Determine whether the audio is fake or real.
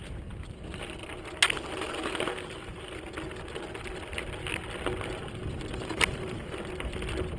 real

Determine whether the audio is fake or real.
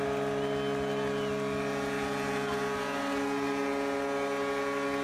real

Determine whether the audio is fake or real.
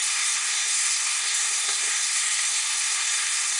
fake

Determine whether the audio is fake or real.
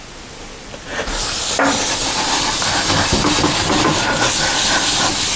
real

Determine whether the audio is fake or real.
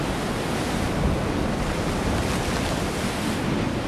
real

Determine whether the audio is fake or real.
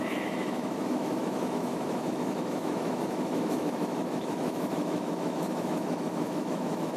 fake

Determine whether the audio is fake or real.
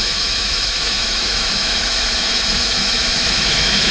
fake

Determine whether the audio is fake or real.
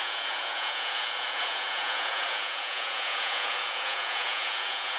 fake